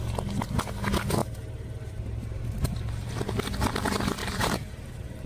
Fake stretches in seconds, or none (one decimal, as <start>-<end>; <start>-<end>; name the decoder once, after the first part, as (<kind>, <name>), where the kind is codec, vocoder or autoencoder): 1.2-3.1 (vocoder, BigVGAN v2); 4.2-5.3